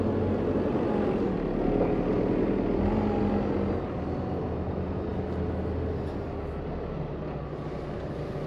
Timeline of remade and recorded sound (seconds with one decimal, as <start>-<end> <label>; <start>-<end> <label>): 0.0-8.5 recorded